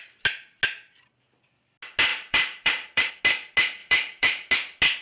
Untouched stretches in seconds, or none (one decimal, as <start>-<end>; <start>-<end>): 0.0-2.1; 3.1-3.8; 4.5-5.0